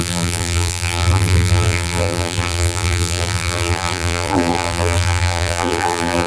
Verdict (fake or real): fake